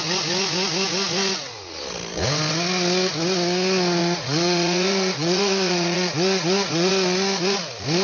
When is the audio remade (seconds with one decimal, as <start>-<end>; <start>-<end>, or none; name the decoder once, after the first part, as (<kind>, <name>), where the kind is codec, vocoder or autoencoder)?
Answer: 4.0-6.9 (vocoder, Vocos)